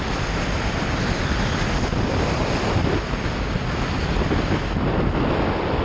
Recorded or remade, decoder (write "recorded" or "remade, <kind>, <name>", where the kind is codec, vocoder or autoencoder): recorded